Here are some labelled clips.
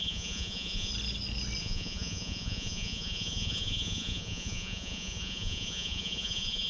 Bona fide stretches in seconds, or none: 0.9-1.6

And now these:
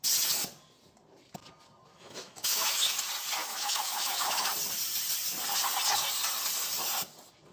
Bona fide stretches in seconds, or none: 0.0-1.9; 3.0-3.4; 4.5-7.5

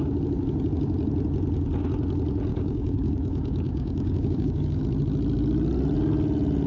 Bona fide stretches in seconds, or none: 0.0-2.5; 4.8-6.7